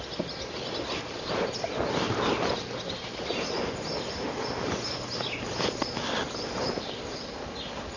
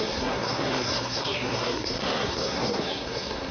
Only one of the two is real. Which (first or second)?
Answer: first